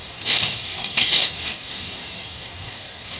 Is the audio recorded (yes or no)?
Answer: no